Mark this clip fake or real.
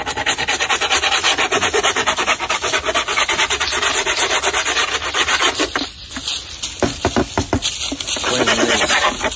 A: real